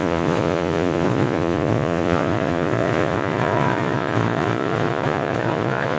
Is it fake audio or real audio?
fake